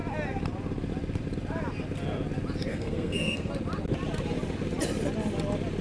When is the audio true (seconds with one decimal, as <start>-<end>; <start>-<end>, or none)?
0.0-2.7; 3.5-5.8